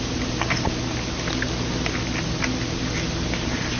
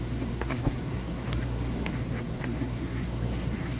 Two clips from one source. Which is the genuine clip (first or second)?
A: first